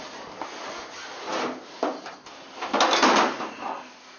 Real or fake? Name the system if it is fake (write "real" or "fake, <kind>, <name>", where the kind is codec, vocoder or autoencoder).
real